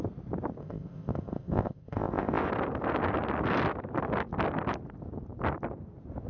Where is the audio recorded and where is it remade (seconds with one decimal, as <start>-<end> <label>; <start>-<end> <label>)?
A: 0.0-0.6 recorded; 0.6-2.5 remade; 2.5-6.3 recorded